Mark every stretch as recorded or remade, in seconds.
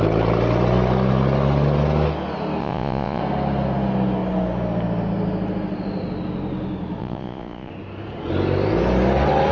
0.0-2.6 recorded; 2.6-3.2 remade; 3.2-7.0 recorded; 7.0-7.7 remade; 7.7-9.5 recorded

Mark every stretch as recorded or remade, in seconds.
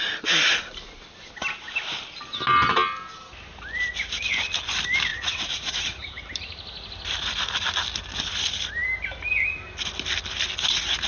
0.0-5.1 recorded; 5.1-6.2 remade; 6.2-11.1 recorded